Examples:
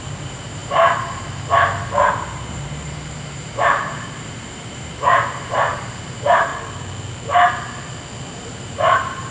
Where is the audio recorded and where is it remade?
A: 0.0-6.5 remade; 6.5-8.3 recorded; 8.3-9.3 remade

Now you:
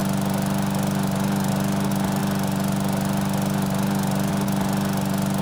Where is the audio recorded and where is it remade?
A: 0.0-5.4 recorded